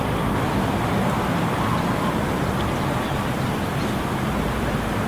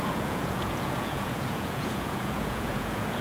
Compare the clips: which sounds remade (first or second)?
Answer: second